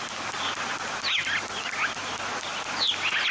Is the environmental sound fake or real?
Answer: real